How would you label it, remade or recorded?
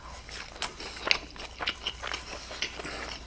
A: recorded